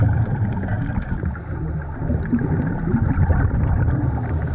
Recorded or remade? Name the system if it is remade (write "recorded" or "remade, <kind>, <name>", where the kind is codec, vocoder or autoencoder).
recorded